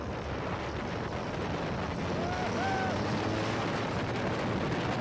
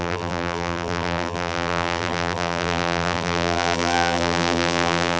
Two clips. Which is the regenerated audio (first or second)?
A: second